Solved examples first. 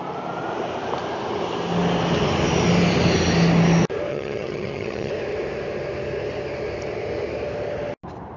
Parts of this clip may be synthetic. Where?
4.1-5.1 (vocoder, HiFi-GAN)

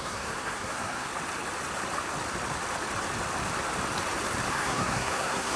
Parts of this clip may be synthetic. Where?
0.0-1.1 (codec, SNAC); 4.5-5.6

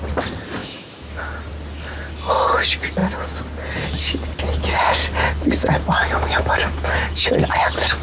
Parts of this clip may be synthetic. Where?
0.6-1.2 (autoencoder, DAC-VAE); 6.0-7.6